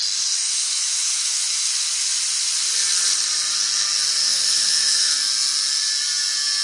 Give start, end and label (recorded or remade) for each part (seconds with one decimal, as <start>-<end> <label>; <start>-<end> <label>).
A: 0.0-0.4 recorded; 0.4-1.7 remade; 1.7-4.2 recorded; 4.2-5.1 remade; 5.1-6.6 recorded